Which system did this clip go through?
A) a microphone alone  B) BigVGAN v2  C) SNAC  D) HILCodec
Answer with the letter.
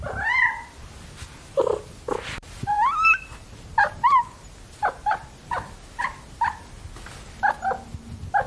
A